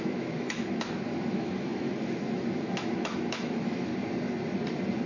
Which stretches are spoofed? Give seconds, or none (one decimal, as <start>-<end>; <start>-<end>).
0.0-3.9